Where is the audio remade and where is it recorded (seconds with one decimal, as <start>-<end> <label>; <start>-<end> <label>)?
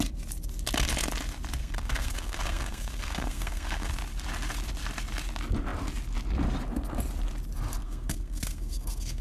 0.0-1.6 recorded; 1.6-3.9 remade; 3.9-7.8 recorded; 7.8-9.2 remade